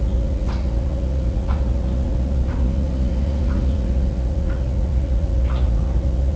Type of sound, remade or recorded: remade